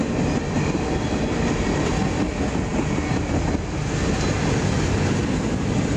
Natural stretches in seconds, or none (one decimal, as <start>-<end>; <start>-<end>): 0.0-6.0